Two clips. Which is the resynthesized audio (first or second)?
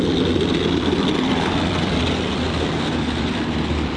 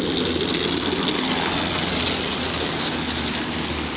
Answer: first